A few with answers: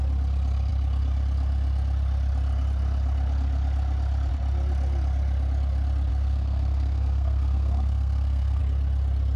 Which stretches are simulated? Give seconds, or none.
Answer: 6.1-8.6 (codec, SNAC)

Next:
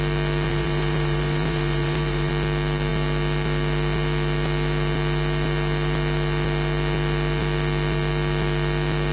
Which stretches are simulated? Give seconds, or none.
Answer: 0.5-2.3 (vocoder, BigVGAN v2)

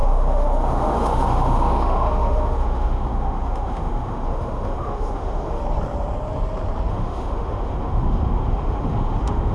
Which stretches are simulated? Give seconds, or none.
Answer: 0.0-5.6 (autoencoder, DAC-VAE); 6.9-9.5

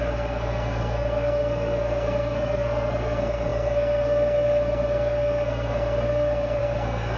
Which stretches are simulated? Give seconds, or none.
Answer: 0.0-7.2 (codec, SNAC)

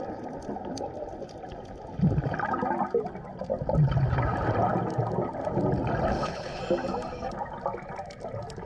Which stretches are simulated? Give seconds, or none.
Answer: 6.1-6.6 (codec, HILCodec)